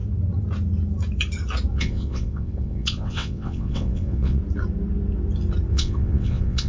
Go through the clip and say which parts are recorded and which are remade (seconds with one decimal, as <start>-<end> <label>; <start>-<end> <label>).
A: 0.0-1.7 recorded; 1.7-4.4 remade; 4.4-5.7 recorded; 5.7-6.7 remade